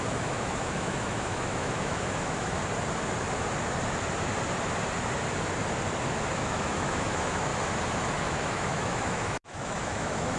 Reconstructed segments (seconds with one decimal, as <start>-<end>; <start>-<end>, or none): 0.0-2.6; 6.3-7.5; 8.1-10.4